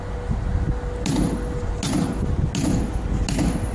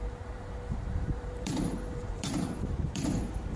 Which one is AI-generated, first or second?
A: second